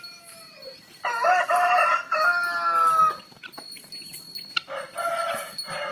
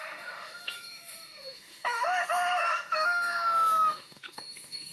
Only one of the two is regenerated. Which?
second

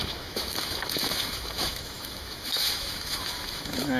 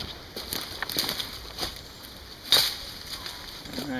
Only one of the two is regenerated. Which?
first